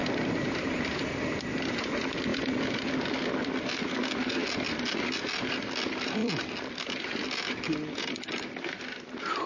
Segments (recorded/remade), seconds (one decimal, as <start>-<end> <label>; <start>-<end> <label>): 0.0-1.4 remade; 1.4-6.2 recorded; 6.2-7.3 remade; 7.3-9.5 recorded